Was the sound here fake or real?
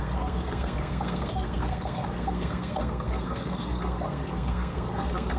fake